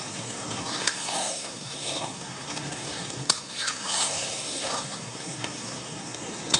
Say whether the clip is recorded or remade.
remade